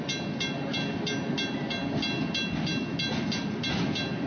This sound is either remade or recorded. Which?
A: recorded